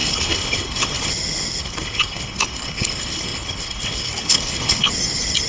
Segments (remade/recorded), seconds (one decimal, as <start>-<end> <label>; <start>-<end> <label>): 0.0-1.1 remade; 1.1-1.6 recorded; 1.6-4.9 remade; 4.9-5.5 recorded